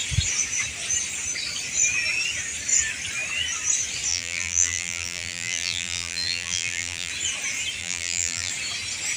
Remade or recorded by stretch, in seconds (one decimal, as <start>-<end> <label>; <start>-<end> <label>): 0.0-4.1 recorded; 4.1-7.1 remade; 7.1-7.8 recorded; 7.8-8.5 remade; 8.5-9.2 recorded